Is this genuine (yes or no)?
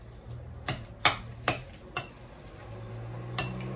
yes